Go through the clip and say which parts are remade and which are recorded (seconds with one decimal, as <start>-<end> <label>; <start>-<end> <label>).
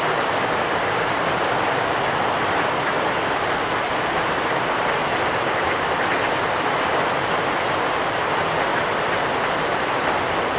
0.0-10.6 recorded